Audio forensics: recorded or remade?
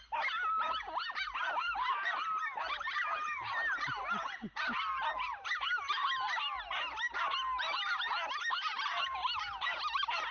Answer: recorded